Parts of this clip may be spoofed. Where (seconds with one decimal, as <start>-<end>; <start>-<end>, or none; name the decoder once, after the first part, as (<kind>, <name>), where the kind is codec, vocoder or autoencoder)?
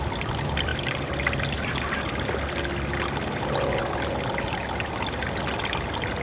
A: none